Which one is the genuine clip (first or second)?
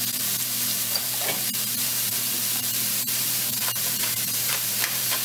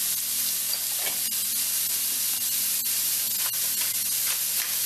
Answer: second